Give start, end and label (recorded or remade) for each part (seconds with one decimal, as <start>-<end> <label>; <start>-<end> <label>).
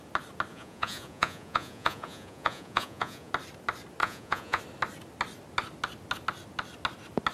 0.0-0.5 recorded; 0.5-3.3 remade; 3.3-4.0 recorded; 4.0-4.6 remade; 4.6-7.3 recorded